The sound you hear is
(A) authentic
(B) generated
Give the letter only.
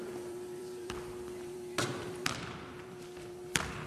B